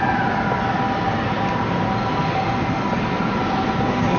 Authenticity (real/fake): real